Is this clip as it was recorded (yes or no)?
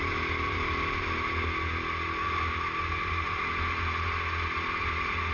yes